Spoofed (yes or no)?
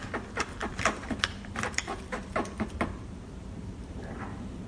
yes